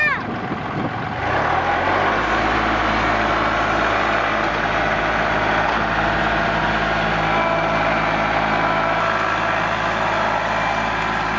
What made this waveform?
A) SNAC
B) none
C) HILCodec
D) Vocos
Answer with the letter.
B